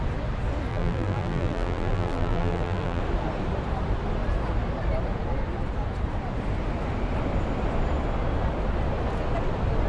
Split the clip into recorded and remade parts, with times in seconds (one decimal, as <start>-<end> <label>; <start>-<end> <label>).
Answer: 0.0-0.7 recorded; 0.7-3.0 remade; 3.0-9.9 recorded